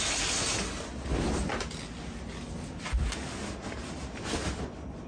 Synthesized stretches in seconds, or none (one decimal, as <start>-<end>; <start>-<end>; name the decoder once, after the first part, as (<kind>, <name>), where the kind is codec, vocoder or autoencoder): none